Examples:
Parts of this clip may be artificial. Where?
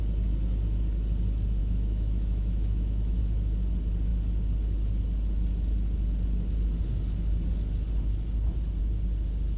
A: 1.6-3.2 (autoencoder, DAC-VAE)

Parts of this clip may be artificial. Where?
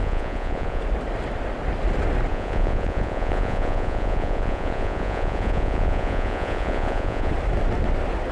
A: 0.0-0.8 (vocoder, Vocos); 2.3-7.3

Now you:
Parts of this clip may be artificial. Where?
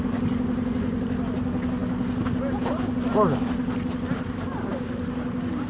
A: none